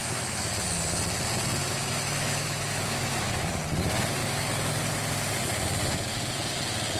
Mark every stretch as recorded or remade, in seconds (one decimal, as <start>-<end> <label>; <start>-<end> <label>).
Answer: 0.0-0.5 remade; 0.5-1.6 recorded; 1.6-3.5 remade; 3.5-4.2 recorded; 4.2-4.8 remade; 4.8-7.0 recorded